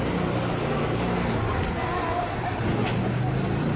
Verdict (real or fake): real